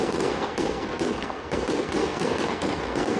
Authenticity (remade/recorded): remade